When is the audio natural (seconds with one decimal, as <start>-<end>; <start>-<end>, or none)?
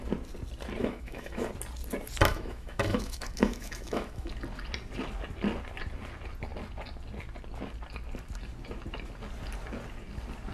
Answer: 0.0-0.8; 1.5-2.3; 4.3-10.5